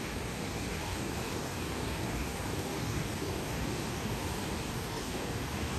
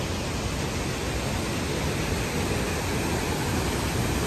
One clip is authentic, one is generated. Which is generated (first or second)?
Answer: first